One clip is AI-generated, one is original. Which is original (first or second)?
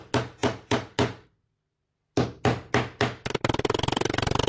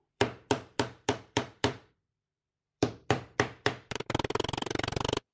first